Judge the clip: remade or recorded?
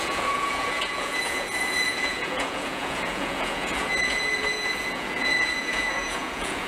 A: remade